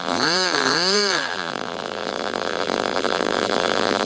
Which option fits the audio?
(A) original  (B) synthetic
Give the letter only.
B